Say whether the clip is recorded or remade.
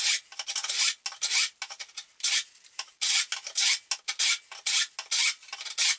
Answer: recorded